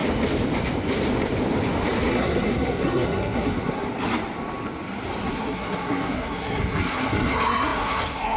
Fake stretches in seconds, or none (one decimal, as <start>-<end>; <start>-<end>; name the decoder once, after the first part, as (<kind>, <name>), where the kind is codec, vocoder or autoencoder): 2.1-3.9 (codec, SNAC); 5.3-8.4